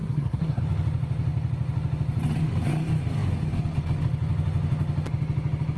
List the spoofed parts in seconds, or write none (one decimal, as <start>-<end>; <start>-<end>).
0.0-0.6